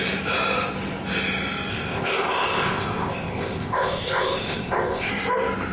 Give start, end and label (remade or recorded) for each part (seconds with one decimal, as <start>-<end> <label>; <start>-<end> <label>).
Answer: 0.0-1.7 recorded; 1.7-5.1 remade; 5.1-5.7 recorded